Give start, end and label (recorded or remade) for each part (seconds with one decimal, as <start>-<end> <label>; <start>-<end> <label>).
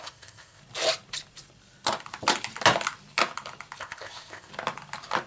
0.0-0.6 remade; 0.6-3.8 recorded; 3.8-4.5 remade; 4.5-5.3 recorded